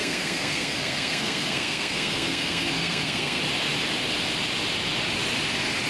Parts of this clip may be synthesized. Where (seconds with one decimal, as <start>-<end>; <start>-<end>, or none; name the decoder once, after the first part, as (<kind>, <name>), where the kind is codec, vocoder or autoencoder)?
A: 0.0-3.4 (codec, SNAC)